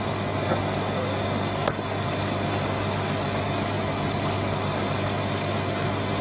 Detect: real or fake real